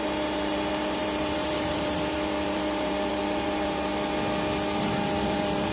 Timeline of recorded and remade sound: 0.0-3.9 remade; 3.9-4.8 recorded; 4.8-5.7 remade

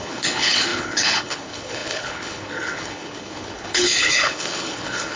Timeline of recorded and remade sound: 0.0-5.2 remade

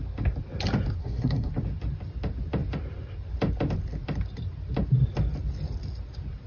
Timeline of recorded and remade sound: 0.0-1.0 recorded; 1.0-1.5 remade; 1.5-6.5 recorded